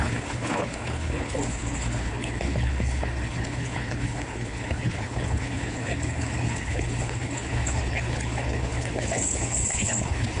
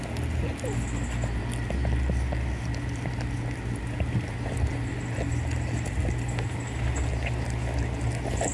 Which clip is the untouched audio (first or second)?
second